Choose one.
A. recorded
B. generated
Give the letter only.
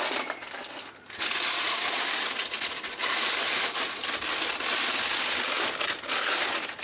A